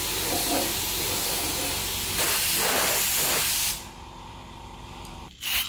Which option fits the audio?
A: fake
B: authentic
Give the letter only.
A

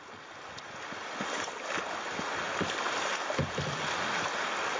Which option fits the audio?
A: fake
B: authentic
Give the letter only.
B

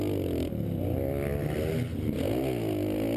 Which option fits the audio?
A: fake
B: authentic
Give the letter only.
B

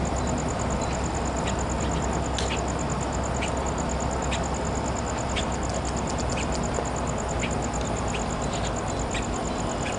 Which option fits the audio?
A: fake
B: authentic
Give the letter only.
B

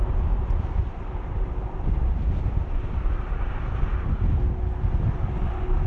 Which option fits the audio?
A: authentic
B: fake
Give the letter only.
A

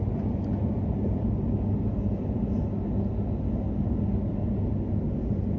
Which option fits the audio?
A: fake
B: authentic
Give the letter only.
B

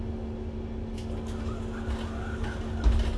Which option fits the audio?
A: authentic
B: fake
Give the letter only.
A